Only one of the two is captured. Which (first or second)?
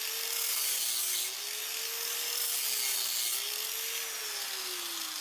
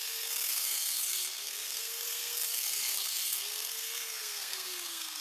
first